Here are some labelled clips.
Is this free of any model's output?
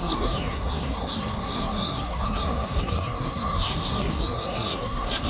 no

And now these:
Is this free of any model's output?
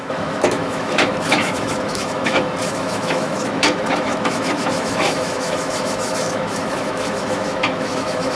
no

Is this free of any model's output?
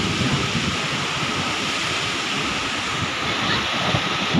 yes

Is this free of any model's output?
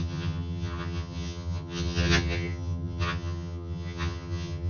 no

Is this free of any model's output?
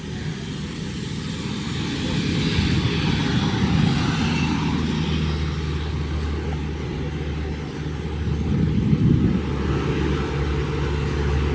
yes